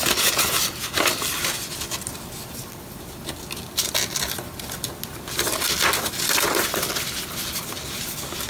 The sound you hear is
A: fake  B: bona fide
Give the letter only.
B